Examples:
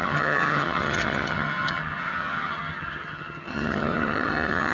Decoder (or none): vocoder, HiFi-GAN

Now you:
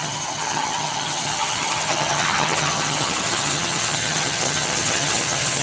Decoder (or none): vocoder, HiFi-GAN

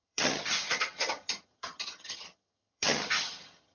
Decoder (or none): vocoder, HiFi-GAN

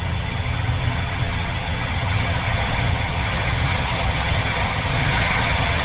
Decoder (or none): vocoder, HiFi-GAN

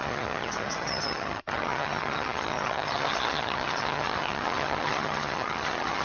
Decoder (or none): vocoder, HiFi-GAN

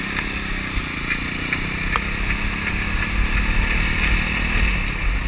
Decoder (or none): none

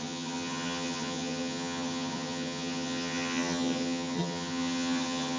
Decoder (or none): vocoder, HiFi-GAN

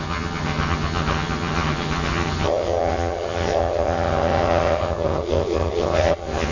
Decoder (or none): vocoder, HiFi-GAN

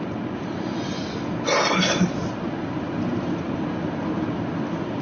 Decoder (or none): none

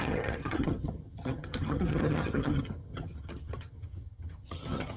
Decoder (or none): vocoder, HiFi-GAN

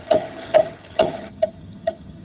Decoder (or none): vocoder, HiFi-GAN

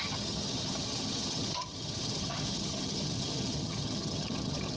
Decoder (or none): vocoder, HiFi-GAN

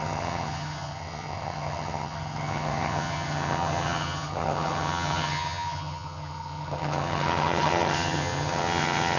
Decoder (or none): vocoder, HiFi-GAN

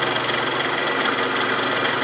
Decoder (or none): none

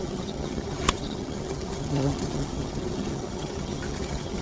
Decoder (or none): vocoder, HiFi-GAN